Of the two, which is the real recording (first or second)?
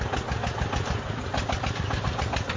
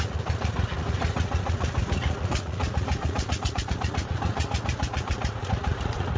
first